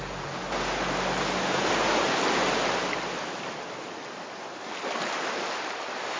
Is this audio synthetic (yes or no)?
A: no